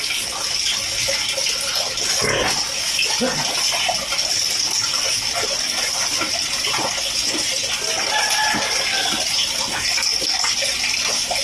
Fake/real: real